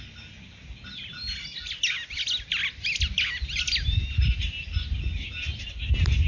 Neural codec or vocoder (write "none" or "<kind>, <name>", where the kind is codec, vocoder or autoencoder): none